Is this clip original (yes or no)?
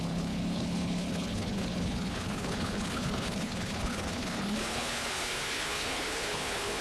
no